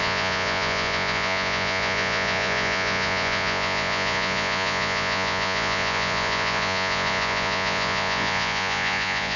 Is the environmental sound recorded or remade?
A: remade